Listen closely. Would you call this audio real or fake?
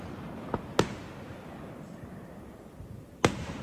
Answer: real